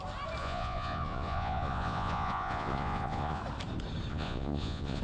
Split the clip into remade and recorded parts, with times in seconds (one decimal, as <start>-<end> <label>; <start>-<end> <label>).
0.0-0.4 recorded; 0.4-3.4 remade; 3.4-4.1 recorded; 4.1-5.0 remade